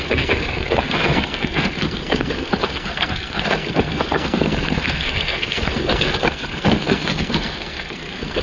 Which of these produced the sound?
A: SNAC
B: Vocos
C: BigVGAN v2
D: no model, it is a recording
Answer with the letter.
A